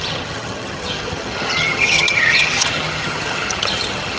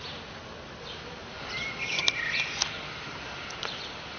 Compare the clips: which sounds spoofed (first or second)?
first